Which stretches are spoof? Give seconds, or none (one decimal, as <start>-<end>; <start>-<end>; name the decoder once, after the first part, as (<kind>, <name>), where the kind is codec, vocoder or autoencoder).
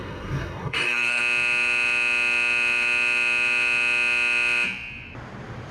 0.0-1.2 (codec, SNAC)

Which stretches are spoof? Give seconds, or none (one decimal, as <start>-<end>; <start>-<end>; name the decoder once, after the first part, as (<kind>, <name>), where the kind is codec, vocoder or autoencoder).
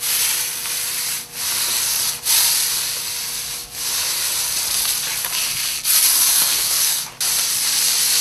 6.3-7.1 (codec, SNAC)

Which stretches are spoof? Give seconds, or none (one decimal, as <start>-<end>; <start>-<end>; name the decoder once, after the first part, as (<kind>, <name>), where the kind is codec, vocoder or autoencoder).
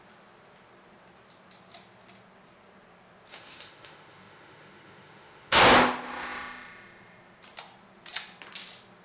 3.3-5.6 (autoencoder, DAC-VAE)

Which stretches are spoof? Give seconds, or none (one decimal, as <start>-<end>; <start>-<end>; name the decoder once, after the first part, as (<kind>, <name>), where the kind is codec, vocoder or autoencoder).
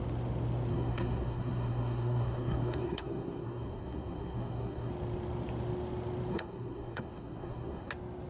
0.7-4.9 (codec, SNAC); 6.3-7.9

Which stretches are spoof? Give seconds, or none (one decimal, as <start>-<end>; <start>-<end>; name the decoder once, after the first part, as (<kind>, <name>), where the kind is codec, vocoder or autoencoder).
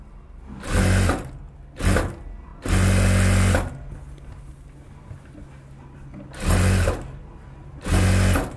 none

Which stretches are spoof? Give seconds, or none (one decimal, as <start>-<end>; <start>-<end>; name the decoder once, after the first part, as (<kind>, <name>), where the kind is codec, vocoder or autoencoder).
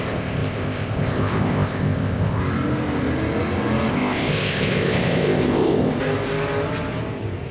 0.0-2.4 (codec, ZipCodec); 3.9-5.9